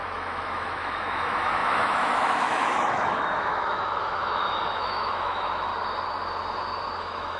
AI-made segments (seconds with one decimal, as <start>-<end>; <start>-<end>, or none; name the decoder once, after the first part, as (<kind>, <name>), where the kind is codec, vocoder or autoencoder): 0.0-5.7 (autoencoder, DAC-VAE); 7.0-7.4